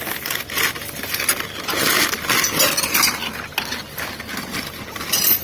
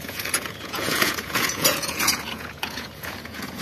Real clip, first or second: first